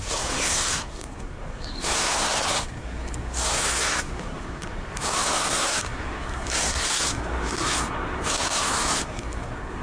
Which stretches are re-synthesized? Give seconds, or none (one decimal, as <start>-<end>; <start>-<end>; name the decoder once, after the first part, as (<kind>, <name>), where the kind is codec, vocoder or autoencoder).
0.0-9.8 (codec, SNAC)